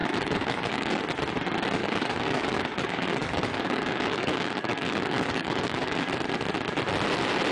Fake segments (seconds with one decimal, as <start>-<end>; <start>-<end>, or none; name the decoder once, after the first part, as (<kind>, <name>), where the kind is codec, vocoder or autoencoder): 0.0-1.0 (codec, DAC); 1.8-6.1